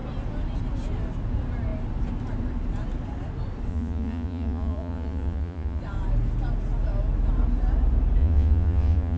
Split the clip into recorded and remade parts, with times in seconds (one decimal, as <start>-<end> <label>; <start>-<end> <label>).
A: 0.0-3.7 recorded; 3.7-5.8 remade; 5.8-8.2 recorded; 8.2-9.2 remade